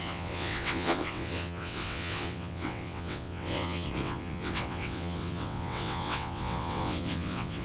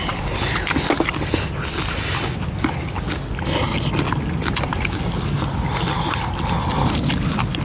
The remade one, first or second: first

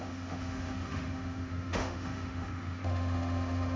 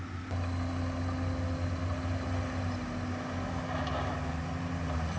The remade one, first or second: first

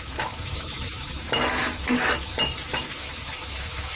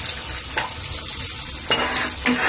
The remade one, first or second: first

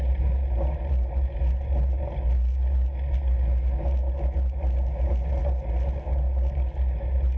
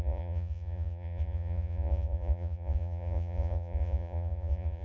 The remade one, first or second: second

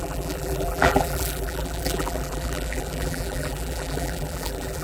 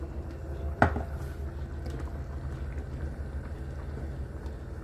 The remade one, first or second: first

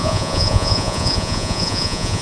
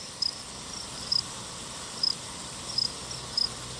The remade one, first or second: first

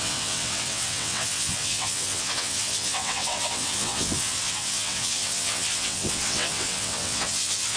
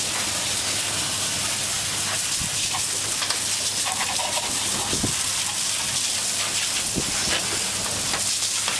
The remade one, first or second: first